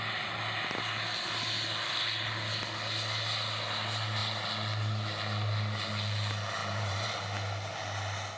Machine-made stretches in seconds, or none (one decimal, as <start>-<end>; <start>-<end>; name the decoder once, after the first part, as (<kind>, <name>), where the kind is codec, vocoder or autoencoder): 6.6-7.1 (vocoder, BigVGAN v2)